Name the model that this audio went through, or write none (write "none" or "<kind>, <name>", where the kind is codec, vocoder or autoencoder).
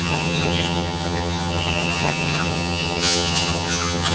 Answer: vocoder, HiFi-GAN